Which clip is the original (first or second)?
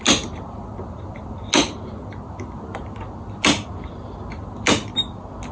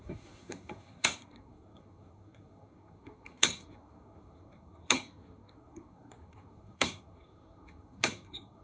first